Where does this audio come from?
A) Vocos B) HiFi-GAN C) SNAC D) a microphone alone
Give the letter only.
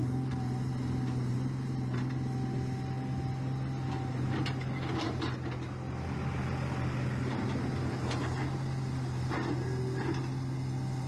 D